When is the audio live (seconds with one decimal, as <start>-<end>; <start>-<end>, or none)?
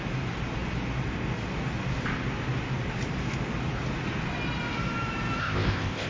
0.0-5.4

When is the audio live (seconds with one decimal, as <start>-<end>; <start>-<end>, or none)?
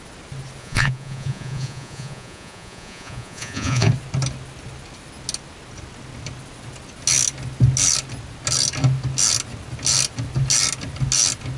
0.0-0.6; 3.9-11.6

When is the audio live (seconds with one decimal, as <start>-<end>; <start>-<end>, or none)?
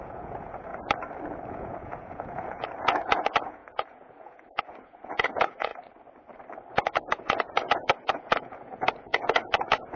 0.7-1.5; 5.7-6.7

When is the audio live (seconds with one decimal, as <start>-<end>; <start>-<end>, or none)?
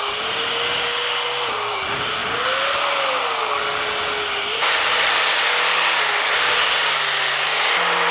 0.0-8.1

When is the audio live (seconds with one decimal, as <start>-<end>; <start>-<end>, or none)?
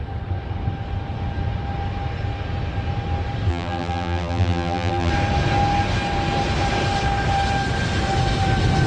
0.0-3.5; 5.1-8.9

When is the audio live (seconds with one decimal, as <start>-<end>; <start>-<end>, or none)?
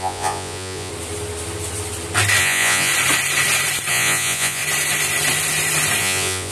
0.9-2.4; 2.9-3.9; 4.6-6.0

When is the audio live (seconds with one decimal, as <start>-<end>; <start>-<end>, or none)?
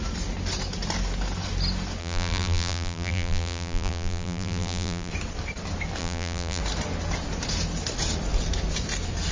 0.0-2.0; 5.1-6.0; 6.6-9.3